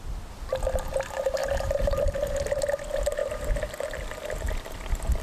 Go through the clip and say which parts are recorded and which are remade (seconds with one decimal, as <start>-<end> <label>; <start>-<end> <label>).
0.0-1.4 recorded; 1.4-2.1 remade; 2.1-3.2 recorded; 3.2-3.8 remade; 3.8-5.2 recorded